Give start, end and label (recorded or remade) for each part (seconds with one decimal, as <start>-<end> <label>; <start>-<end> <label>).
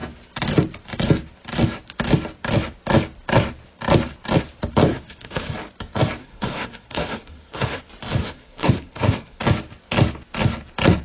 0.0-4.9 recorded; 4.9-5.5 remade; 5.5-6.2 recorded; 6.2-7.8 remade; 7.8-8.2 recorded; 8.2-9.4 remade; 9.4-11.0 recorded